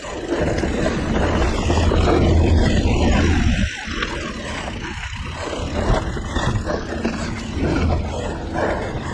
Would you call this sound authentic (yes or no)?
yes